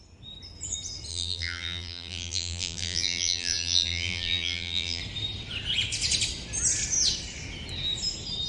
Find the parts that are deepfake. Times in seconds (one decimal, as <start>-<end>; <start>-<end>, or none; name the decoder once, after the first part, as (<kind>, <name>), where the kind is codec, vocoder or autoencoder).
1.1-5.0 (vocoder, BigVGAN v2)